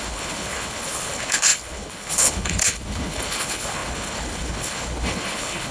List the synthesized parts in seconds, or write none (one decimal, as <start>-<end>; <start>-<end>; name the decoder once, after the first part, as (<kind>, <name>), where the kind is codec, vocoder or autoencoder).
0.0-5.7 (codec, HILCodec)